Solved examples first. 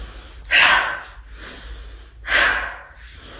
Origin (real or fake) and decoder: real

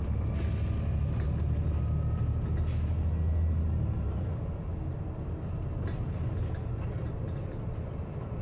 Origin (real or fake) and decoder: real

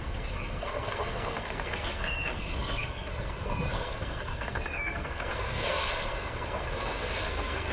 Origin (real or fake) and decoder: fake, codec, SNAC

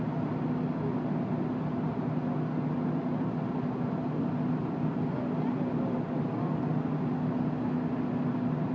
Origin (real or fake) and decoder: real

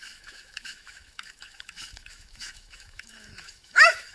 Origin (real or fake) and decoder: fake, autoencoder, DAC-VAE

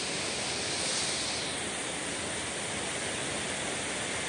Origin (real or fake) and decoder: real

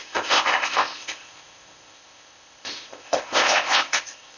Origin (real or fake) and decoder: fake, codec, ZipCodec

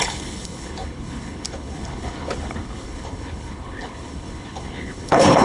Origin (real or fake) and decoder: fake, codec, HILCodec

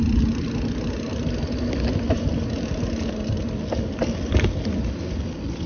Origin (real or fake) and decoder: real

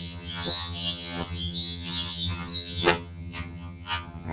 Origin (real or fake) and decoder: fake, vocoder, HiFi-GAN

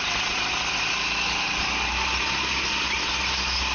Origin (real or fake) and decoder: real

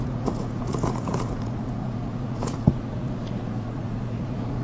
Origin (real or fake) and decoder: fake, vocoder, Vocos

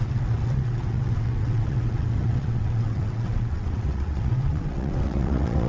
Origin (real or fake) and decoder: fake, vocoder, WaveNeXt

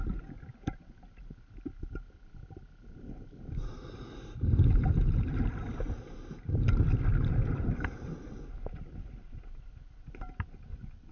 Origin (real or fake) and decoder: real